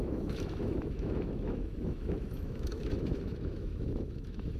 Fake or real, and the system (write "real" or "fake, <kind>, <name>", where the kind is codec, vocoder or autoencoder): fake, autoencoder, DAC-VAE